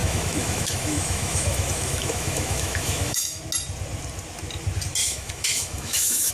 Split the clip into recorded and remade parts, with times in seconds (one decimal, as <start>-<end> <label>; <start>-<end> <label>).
0.0-3.4 remade; 3.4-5.0 recorded; 5.0-6.3 remade